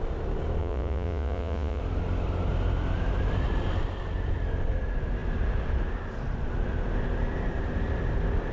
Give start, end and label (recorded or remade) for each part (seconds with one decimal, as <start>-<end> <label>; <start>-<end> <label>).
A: 0.0-0.6 recorded; 0.6-1.8 remade; 1.8-8.5 recorded